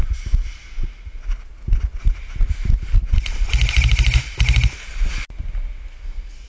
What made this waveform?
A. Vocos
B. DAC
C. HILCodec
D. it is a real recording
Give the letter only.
D